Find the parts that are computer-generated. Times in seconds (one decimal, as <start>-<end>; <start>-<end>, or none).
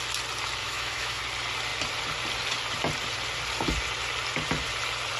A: 0.6-1.2